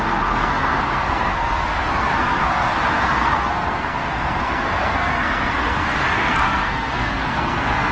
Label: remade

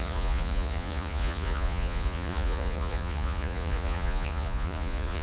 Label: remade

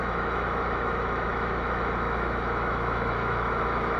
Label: remade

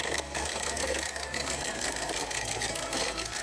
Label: remade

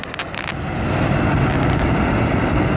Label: recorded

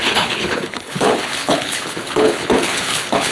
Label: remade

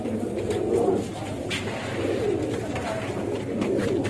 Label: recorded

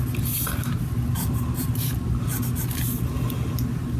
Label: recorded